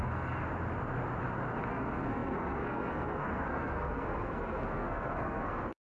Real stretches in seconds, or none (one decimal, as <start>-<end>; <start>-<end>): 0.4-1.7